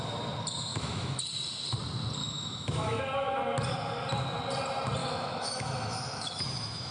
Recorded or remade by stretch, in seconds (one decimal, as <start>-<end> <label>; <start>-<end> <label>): 0.0-0.7 recorded; 0.7-1.2 remade; 1.2-2.2 recorded; 2.2-3.0 remade; 3.0-5.0 recorded; 5.0-6.9 remade